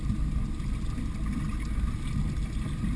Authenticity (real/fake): real